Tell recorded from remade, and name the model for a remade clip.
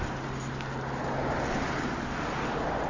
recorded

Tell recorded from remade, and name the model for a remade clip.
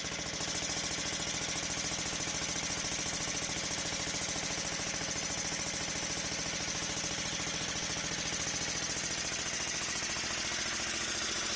recorded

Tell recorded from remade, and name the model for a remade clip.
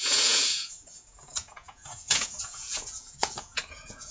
remade, vocoder, Vocos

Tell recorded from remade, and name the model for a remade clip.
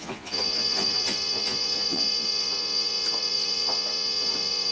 remade, vocoder, Vocos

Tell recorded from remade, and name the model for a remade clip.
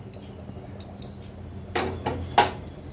recorded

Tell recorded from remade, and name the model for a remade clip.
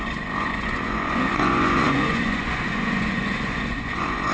remade, vocoder, Vocos